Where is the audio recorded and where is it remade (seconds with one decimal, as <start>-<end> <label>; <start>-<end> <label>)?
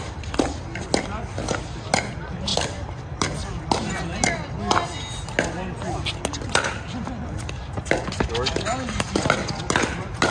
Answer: 0.0-10.3 recorded